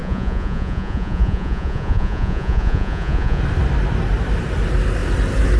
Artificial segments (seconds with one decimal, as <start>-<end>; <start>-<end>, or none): 0.0-3.4